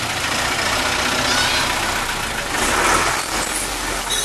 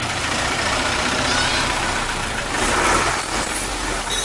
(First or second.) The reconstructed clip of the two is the second